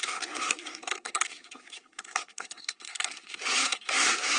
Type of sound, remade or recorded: remade